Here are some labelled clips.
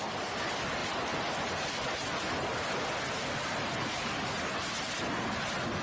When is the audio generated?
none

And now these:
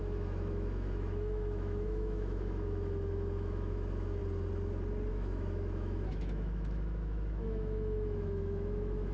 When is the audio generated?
0.0-4.2 (autoencoder, DAC-VAE); 5.1-9.1

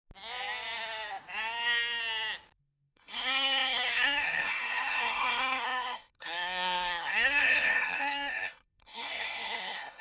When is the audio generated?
2.6-10.0 (codec, SNAC)

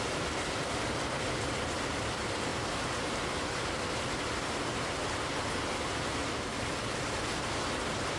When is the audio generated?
none